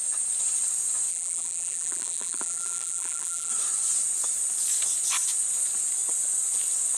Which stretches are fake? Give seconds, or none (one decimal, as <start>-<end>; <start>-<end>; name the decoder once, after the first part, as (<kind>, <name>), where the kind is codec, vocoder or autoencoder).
1.1-3.5 (vocoder, BigVGAN v2)

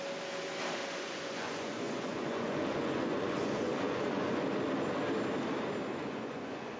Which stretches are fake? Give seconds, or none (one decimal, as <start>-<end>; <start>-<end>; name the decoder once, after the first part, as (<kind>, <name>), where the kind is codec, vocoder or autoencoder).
0.8-4.4 (vocoder, Vocos); 5.9-6.8

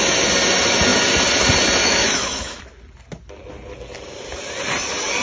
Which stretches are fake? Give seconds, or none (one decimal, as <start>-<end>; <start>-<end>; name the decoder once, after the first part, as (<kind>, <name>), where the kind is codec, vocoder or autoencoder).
1.8-2.6 (autoencoder, DAC-VAE)